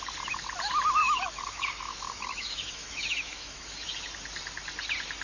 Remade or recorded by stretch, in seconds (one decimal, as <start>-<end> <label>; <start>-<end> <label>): 0.0-1.0 recorded; 1.0-4.1 remade; 4.1-5.2 recorded